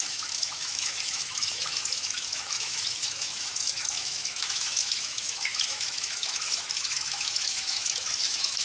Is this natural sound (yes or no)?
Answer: no